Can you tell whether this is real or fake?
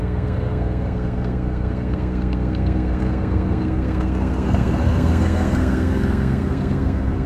fake